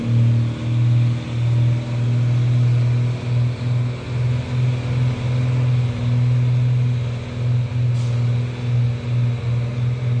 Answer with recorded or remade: recorded